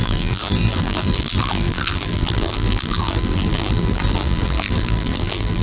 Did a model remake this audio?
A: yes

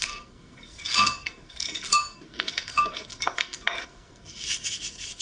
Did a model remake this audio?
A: yes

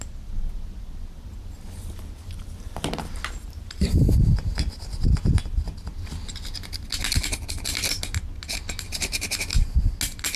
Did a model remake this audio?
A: no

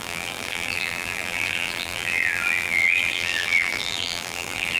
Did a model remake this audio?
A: yes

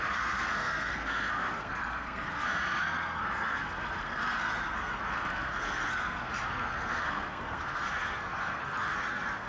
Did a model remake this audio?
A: yes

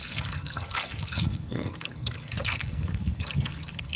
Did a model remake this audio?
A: yes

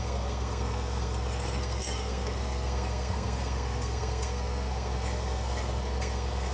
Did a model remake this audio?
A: yes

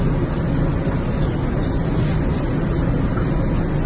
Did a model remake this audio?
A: no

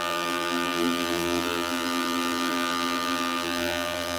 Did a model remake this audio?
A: yes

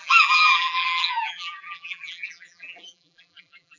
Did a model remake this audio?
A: yes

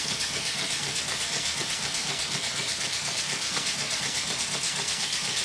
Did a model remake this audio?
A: yes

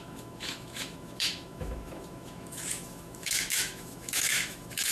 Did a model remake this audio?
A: yes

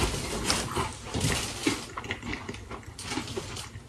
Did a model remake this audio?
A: no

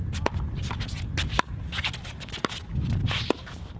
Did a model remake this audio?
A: no